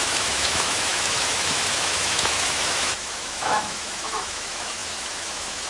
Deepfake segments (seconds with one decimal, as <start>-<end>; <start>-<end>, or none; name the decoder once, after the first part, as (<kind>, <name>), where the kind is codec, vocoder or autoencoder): 0.0-5.7 (autoencoder, DAC-VAE)